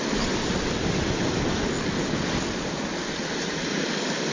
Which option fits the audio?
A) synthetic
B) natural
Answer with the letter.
B